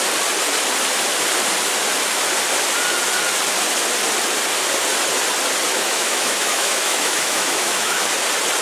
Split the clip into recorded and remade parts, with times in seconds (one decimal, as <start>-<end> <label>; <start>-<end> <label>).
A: 0.0-5.7 recorded; 5.7-8.1 remade; 8.1-8.6 recorded